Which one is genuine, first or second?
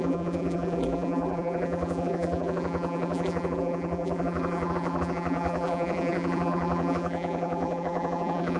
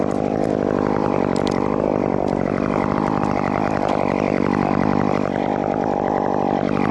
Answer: second